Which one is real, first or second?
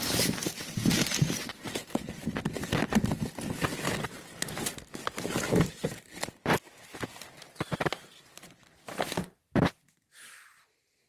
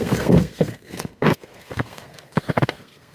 first